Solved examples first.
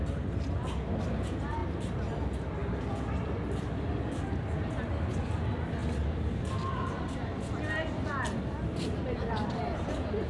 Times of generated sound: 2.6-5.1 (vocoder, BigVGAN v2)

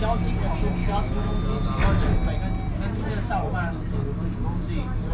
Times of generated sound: 0.8-1.4 (autoencoder, DAC-VAE)

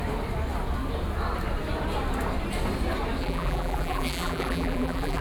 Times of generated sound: 3.2-5.2 (vocoder, BigVGAN v2)

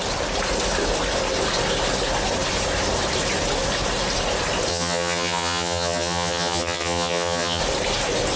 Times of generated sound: 4.7-7.6 (vocoder, HiFi-GAN)

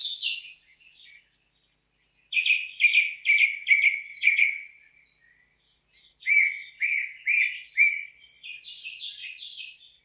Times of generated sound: 0.0-1.2 (vocoder, Vocos); 4.1-4.9; 9.2-10.0

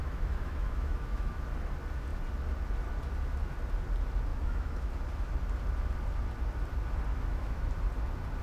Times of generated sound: 0.0-1.3 (autoencoder, DAC-VAE); 4.3-4.9; 7.1-7.7

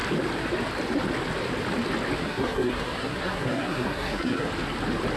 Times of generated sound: 2.2-4.5 (codec, SNAC)

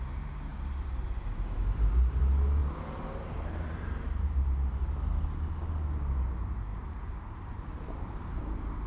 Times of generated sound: 0.5-2.2 (vocoder, BigVGAN v2); 2.6-4.2; 6.7-8.4